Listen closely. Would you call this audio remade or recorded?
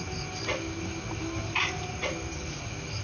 recorded